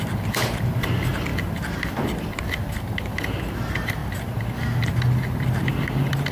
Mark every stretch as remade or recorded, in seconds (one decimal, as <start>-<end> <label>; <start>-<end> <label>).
0.0-1.3 remade; 1.3-3.5 recorded; 3.5-4.0 remade; 4.0-6.3 recorded